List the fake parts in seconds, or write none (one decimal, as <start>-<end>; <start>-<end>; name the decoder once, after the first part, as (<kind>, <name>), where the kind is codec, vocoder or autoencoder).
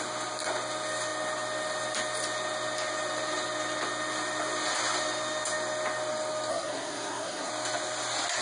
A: 6.5-7.5 (codec, SNAC)